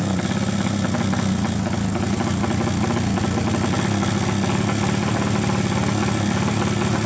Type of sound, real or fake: real